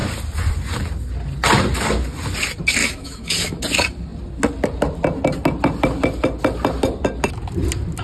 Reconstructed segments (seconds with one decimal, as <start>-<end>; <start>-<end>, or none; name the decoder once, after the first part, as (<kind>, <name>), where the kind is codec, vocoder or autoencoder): 2.8-3.6 (autoencoder, DAC-VAE)